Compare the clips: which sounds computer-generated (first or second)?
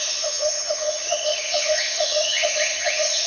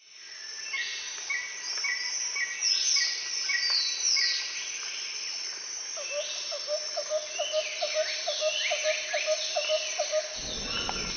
first